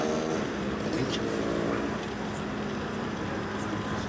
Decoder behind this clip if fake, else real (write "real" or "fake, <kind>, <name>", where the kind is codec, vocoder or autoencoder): real